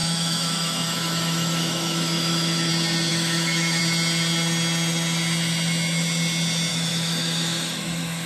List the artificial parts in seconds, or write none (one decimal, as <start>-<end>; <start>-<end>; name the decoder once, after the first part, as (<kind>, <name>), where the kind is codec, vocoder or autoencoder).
0.0-2.7 (autoencoder, DAC-VAE); 3.1-3.8; 6.7-8.3